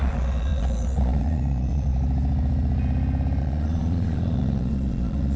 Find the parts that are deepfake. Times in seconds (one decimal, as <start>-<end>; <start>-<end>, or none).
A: 0.0-1.9; 3.4-5.4